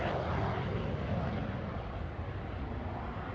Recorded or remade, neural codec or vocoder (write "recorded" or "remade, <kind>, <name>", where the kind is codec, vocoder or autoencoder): recorded